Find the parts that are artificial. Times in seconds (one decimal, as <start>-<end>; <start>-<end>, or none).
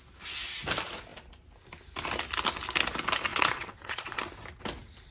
3.3-4.2